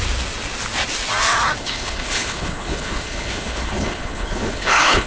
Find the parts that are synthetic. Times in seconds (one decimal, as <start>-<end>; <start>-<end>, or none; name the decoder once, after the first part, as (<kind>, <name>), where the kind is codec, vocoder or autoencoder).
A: 1.6-5.1 (codec, HILCodec)